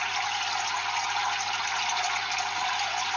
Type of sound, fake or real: real